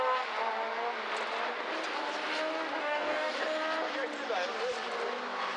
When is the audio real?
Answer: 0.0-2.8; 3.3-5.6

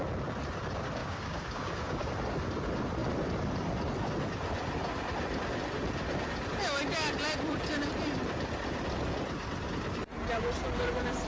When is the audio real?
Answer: 0.0-1.0; 2.1-11.3

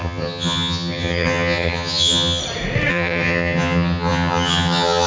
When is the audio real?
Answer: 2.4-2.9

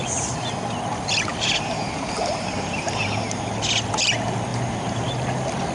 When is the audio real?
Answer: 0.0-1.3; 3.5-4.5; 5.1-5.7

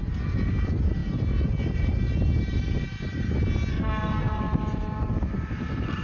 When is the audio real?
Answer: 0.0-3.7; 4.4-6.0